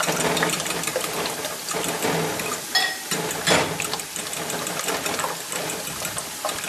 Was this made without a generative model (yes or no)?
yes